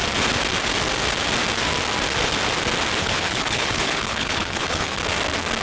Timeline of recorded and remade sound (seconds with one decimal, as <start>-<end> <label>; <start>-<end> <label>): 0.0-3.0 recorded; 3.0-5.0 remade; 5.0-5.6 recorded